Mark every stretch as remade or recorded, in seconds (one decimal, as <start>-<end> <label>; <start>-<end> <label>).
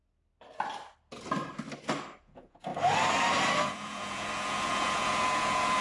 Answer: 0.0-2.2 recorded; 2.2-2.7 remade; 2.7-3.6 recorded; 3.6-5.8 remade